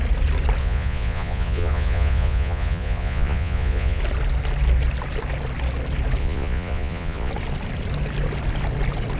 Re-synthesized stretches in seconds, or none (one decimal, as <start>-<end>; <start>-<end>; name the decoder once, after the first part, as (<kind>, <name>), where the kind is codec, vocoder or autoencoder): 0.6-4.0 (vocoder, Vocos); 6.2-7.3